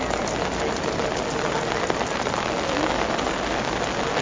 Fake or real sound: real